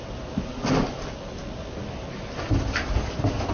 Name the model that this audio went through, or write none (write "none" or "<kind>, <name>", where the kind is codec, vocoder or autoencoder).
none